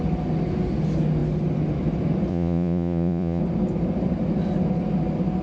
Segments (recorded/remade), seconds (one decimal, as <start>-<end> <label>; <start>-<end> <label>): 0.0-2.3 recorded; 2.3-3.4 remade; 3.4-5.4 recorded